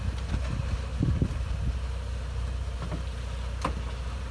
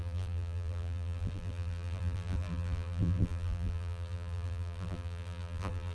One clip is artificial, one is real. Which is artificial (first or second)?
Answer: second